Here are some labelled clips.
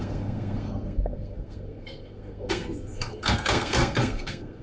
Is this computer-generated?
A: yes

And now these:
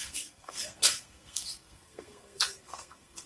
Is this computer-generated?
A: yes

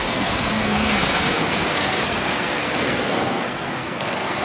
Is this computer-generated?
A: yes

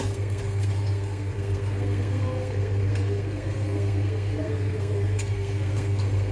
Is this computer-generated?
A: yes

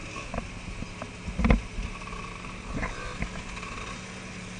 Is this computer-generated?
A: no